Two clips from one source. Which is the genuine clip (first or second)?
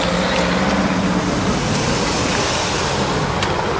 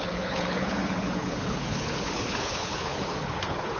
first